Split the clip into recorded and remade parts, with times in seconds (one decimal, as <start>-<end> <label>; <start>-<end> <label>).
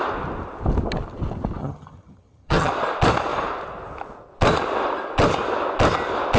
0.0-1.6 recorded; 1.6-2.7 remade; 2.7-6.4 recorded